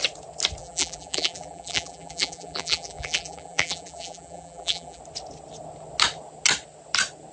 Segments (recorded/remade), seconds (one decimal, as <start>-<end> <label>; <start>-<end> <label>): 0.0-0.6 recorded; 0.6-5.0 remade; 5.0-7.3 recorded